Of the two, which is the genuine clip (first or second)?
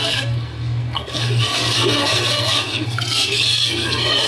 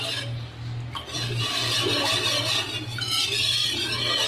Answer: second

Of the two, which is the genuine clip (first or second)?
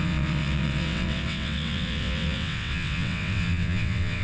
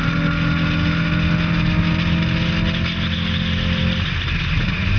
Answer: second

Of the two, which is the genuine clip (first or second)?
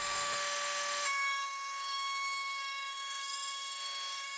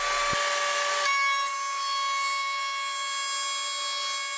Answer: second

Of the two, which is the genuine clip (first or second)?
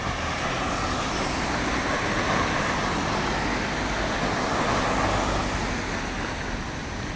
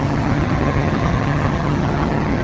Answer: first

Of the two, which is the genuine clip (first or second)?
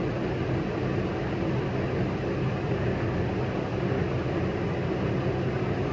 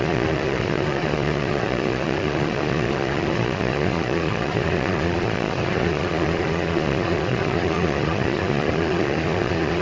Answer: first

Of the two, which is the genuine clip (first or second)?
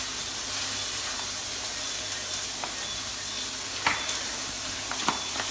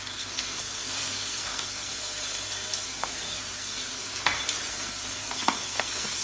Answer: first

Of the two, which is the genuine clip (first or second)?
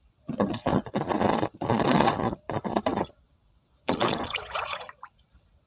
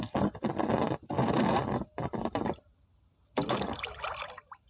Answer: second